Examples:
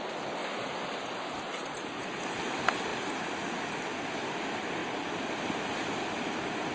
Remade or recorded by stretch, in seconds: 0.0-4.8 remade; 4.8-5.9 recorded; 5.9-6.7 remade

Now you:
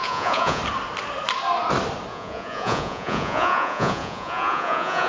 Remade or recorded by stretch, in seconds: 0.0-0.6 remade; 0.6-2.1 recorded; 2.1-5.1 remade

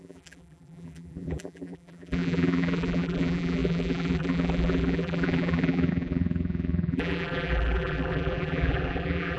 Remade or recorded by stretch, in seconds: 0.0-9.4 remade